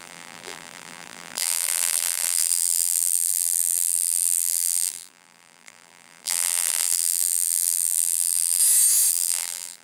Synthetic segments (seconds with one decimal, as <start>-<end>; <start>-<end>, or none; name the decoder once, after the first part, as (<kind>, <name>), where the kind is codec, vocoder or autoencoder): 0.0-8.6 (vocoder, BigVGAN v2); 9.1-9.8